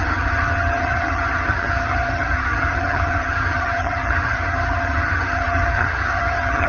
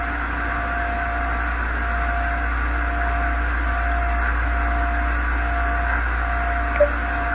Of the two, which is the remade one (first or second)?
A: first